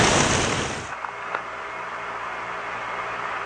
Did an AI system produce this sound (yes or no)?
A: no